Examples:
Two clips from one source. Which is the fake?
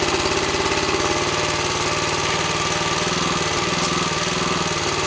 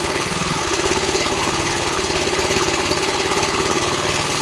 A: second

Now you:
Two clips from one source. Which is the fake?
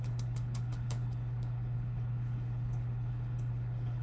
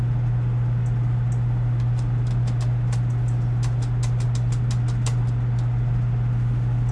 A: first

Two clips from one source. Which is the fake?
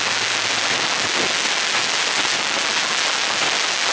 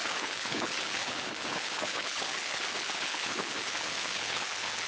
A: second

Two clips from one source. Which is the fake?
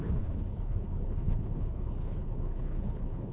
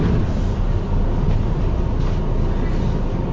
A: first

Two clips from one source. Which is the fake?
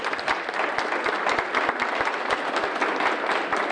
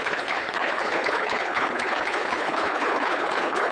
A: second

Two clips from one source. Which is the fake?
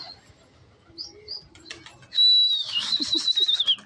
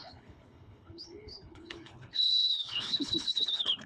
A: second